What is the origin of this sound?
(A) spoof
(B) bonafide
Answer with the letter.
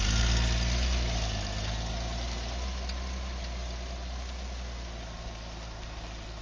B